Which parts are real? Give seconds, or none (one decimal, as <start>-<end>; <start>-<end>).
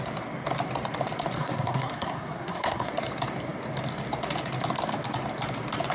0.0-1.4; 2.9-5.9